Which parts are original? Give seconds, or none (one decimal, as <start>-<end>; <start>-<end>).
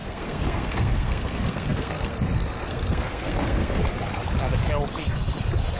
3.8-5.8